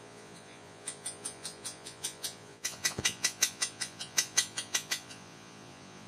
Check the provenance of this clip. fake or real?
fake